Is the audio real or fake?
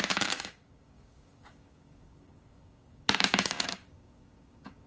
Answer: fake